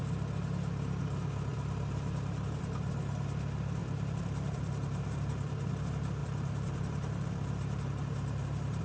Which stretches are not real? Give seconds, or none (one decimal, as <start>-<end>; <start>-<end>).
1.5-2.9; 3.8-5.7; 6.2-8.8